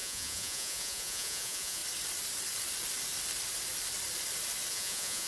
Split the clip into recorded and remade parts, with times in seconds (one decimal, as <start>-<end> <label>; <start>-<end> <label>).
0.0-1.8 remade; 1.8-4.7 recorded; 4.7-5.3 remade